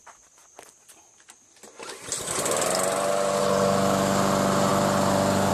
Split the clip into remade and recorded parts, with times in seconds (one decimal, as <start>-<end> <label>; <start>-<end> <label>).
0.0-5.5 recorded